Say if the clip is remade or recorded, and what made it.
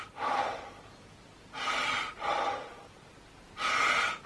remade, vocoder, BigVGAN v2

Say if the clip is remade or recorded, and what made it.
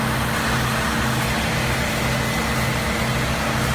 recorded